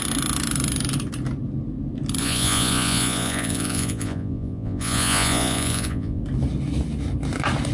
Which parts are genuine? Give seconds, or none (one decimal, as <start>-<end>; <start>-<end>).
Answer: 0.0-2.2; 6.2-7.7